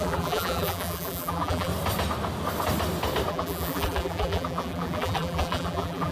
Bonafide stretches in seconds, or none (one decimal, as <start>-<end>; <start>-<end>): 1.7-3.3